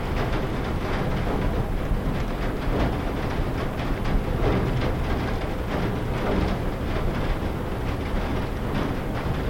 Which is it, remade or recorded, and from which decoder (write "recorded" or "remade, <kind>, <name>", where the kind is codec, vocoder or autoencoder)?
recorded